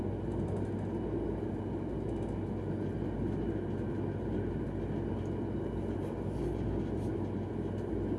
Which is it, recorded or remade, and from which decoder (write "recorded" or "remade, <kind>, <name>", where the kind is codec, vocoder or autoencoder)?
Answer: recorded